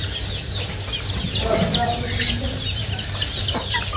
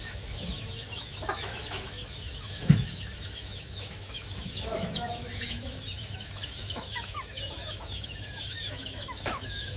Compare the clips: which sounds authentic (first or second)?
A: first